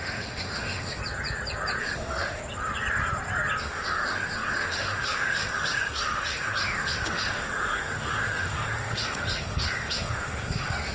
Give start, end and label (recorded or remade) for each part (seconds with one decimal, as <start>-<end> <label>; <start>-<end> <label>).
0.0-1.0 remade; 1.0-1.8 recorded; 1.8-2.4 remade; 2.4-3.6 recorded; 3.6-10.9 remade